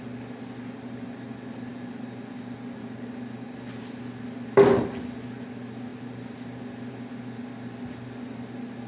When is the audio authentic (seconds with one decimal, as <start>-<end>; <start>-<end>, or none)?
0.0-8.9